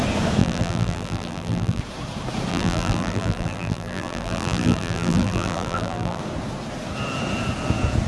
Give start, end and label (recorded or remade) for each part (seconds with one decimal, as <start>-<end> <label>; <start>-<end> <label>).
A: 0.0-0.4 recorded; 0.4-1.8 remade; 1.8-2.5 recorded; 2.5-6.2 remade; 6.2-8.1 recorded